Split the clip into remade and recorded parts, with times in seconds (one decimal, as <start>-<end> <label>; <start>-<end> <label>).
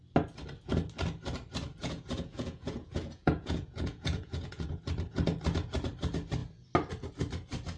0.0-1.8 recorded; 1.8-4.8 remade; 4.8-7.8 recorded